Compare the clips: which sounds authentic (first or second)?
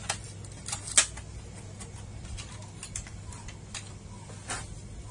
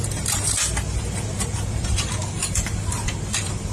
first